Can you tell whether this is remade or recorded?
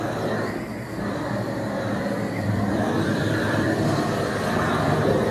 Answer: remade